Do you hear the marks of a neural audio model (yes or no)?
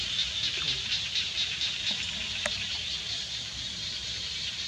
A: no